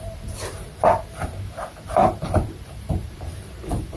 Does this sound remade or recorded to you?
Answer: remade